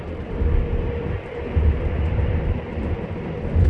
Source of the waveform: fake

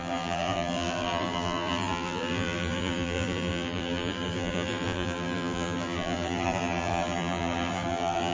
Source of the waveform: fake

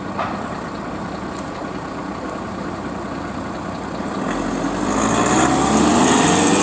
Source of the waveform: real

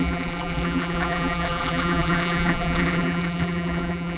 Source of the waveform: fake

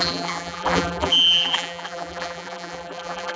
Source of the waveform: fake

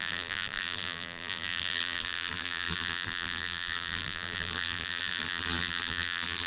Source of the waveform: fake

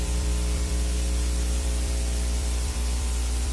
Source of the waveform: fake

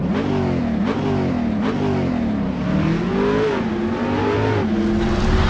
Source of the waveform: real